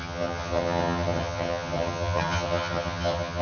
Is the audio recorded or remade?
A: remade